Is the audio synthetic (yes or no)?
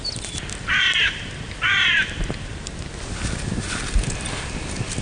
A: no